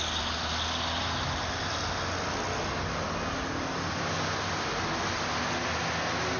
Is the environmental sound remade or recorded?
recorded